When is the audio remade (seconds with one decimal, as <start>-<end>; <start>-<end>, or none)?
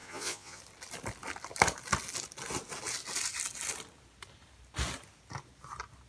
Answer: 0.0-0.6